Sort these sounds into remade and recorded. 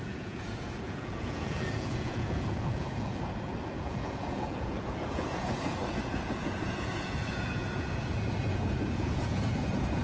remade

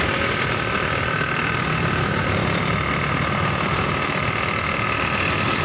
recorded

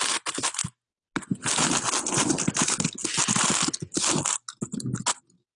recorded